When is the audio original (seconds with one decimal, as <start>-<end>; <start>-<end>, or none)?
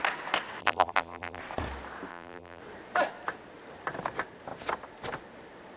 0.0-0.6; 1.4-2.1; 2.6-5.8